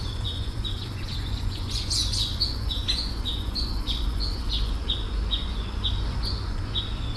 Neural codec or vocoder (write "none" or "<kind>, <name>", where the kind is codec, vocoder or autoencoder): vocoder, Vocos